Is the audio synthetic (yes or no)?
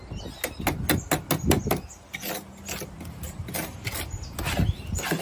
no